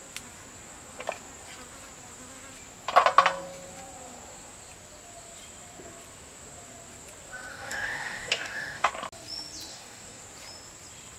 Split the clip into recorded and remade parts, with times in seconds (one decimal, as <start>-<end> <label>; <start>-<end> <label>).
0.0-7.5 recorded; 7.5-8.9 remade; 8.9-9.7 recorded; 9.7-10.2 remade; 10.2-11.2 recorded

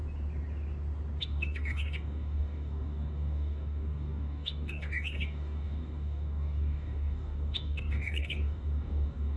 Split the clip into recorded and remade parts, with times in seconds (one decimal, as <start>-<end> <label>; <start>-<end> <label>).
0.0-1.2 recorded; 1.2-9.4 remade

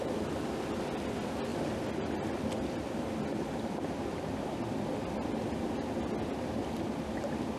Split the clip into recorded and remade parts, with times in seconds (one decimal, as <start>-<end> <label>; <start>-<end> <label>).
0.0-7.6 recorded

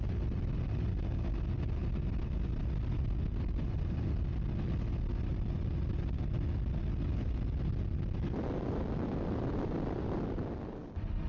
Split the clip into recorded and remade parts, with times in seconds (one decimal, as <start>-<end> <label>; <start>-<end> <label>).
0.0-11.3 recorded

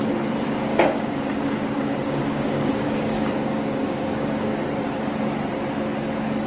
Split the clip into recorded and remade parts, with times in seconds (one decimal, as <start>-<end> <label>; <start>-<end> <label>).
0.0-0.7 recorded; 0.7-4.6 remade; 4.6-6.5 recorded

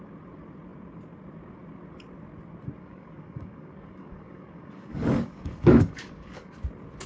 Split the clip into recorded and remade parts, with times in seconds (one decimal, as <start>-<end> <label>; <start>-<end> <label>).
0.0-2.8 recorded; 2.8-6.6 remade; 6.6-7.1 recorded

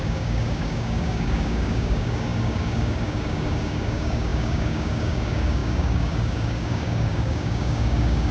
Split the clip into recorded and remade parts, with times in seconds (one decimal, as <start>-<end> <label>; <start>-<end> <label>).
0.0-8.3 remade

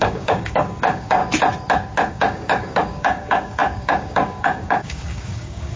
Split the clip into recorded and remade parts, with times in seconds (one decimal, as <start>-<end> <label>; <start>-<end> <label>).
0.0-1.2 remade; 1.2-2.1 recorded; 2.1-5.8 remade